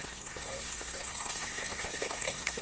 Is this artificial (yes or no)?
yes